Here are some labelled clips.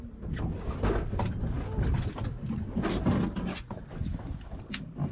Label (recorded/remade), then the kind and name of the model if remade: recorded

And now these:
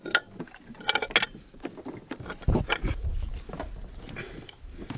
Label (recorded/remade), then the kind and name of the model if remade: recorded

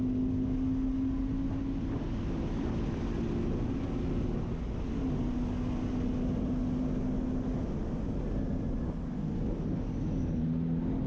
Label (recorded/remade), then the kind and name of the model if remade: recorded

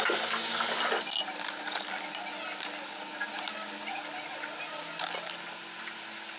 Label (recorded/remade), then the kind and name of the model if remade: recorded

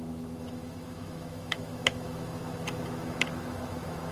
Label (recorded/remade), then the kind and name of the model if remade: remade, autoencoder, DAC-VAE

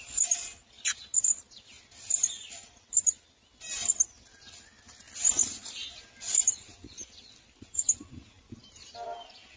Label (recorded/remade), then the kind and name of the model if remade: recorded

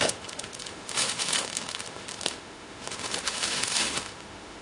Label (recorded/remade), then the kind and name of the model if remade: remade, autoencoder, DAC-VAE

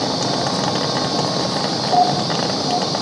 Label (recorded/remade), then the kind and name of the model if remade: recorded